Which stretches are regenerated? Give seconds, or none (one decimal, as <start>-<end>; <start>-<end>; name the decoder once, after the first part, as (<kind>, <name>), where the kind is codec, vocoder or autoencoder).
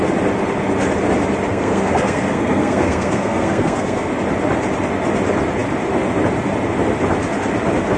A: 1.5-4.1 (codec, SNAC)